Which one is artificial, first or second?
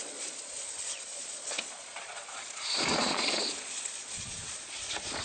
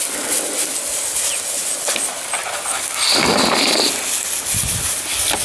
first